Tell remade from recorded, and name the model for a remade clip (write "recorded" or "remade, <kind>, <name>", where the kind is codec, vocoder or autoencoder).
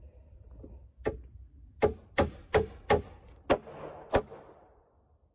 recorded